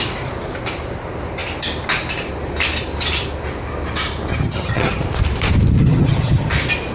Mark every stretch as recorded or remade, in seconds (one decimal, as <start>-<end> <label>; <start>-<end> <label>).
0.0-4.3 recorded; 4.3-5.0 remade; 5.0-5.8 recorded; 5.8-6.5 remade; 6.5-6.9 recorded